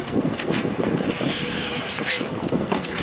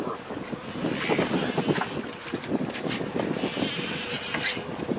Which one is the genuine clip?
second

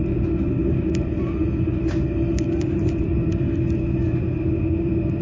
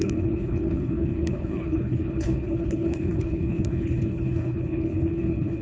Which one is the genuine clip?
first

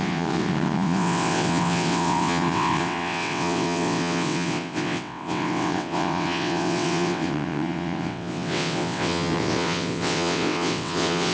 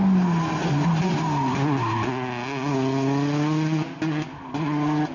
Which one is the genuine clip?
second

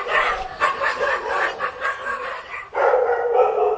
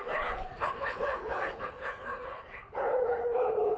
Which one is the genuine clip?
first